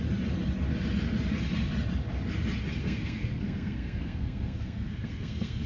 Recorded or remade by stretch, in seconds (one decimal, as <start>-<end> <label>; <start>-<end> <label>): 0.0-2.8 recorded; 2.8-5.7 remade